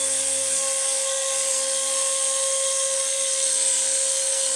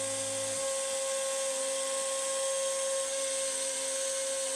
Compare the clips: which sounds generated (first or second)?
first